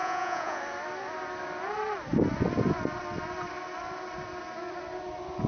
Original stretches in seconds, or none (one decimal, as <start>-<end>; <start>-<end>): 0.6-5.5